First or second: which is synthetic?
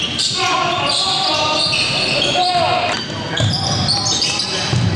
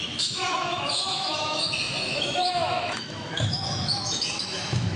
second